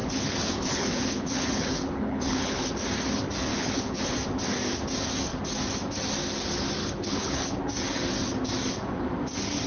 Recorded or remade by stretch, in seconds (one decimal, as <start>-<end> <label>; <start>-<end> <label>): 0.0-2.7 remade; 2.7-3.5 recorded; 3.5-4.1 remade; 4.1-6.8 recorded; 6.8-7.6 remade; 7.6-9.7 recorded